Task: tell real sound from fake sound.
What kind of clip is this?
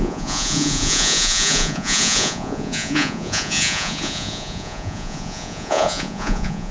fake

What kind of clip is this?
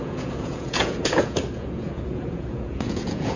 fake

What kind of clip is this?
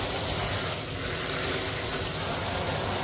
real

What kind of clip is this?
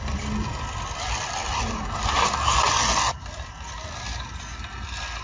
real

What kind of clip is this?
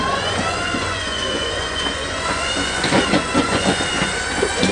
fake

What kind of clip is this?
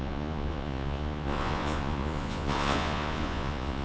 fake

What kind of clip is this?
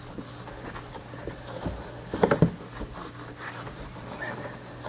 real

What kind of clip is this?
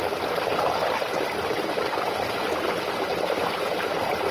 real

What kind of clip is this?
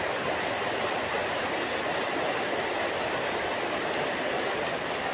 real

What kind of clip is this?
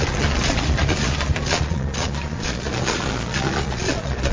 fake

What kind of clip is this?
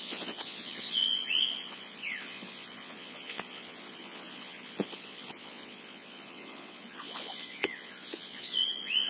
fake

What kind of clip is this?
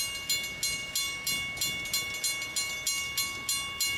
real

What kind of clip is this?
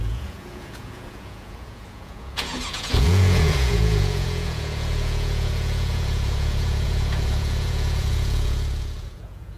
fake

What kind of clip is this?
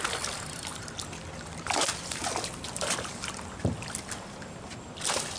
real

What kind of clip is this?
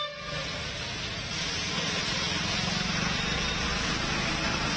real